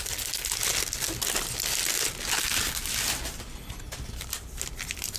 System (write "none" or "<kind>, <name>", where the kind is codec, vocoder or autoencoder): none